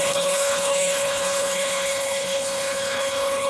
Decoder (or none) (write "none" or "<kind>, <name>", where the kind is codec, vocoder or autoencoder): codec, HILCodec